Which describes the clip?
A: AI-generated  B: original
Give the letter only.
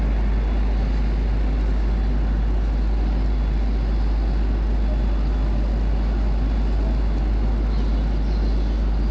B